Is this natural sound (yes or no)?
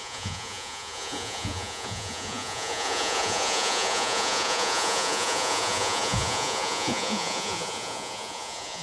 no